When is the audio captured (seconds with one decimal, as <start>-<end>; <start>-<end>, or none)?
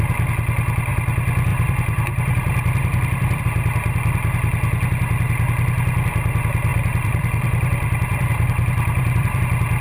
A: 0.0-1.5; 3.4-6.7; 9.4-9.8